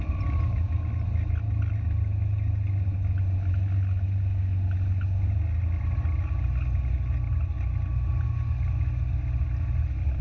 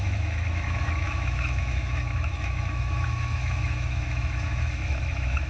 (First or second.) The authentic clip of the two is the first